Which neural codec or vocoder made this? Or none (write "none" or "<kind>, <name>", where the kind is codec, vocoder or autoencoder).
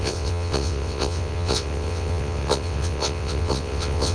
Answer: vocoder, WaveNeXt